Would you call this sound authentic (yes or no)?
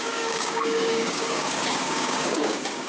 no